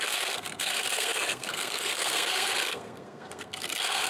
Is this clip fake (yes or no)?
yes